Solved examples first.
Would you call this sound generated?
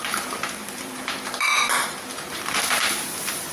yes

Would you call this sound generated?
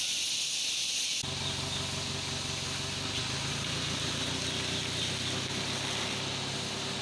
no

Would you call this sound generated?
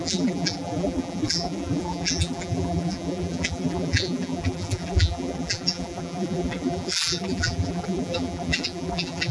yes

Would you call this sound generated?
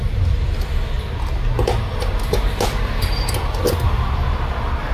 no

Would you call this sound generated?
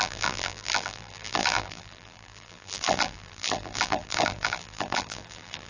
yes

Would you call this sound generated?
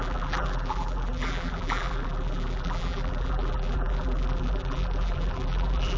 yes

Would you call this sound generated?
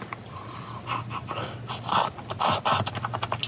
no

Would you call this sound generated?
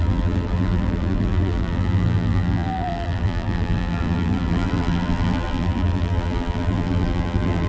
yes